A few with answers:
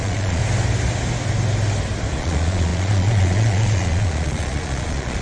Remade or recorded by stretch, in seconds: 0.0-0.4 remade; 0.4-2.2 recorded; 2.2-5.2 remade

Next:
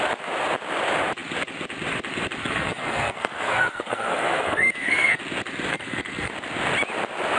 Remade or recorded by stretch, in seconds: 0.0-2.4 recorded; 2.4-5.2 remade; 5.2-5.7 recorded; 5.7-6.3 remade; 6.3-7.4 recorded

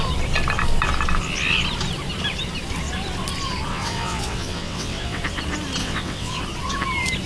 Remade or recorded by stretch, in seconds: 0.0-3.7 recorded; 3.7-5.2 remade; 5.2-5.8 recorded; 5.8-6.4 remade; 6.4-7.3 recorded

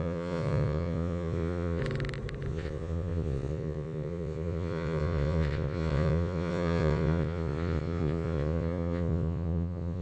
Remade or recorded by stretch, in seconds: 0.0-1.8 remade; 1.8-2.5 recorded; 2.5-10.0 remade

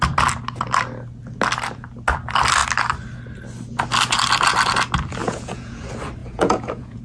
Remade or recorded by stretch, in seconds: 0.0-5.2 recorded; 5.2-5.8 remade; 5.8-6.2 recorded; 6.2-7.0 remade

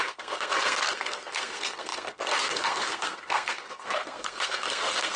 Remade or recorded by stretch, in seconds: 0.0-5.2 remade